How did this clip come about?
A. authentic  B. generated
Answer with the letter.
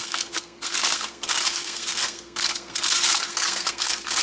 B